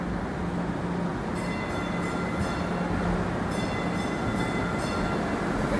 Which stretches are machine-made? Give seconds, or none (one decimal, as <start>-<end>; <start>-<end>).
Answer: none